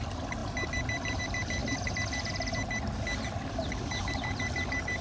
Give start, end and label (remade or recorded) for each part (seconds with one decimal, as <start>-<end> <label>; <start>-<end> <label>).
0.0-4.0 recorded; 4.0-5.0 remade